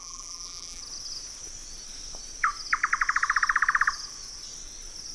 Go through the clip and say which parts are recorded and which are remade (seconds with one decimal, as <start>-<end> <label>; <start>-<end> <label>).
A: 0.0-0.8 remade; 0.8-5.1 recorded